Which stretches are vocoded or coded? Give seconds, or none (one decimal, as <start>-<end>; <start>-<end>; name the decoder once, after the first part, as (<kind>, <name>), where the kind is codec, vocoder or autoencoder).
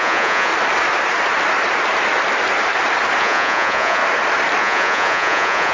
0.0-0.5 (vocoder, Vocos); 3.2-4.0; 4.6-5.7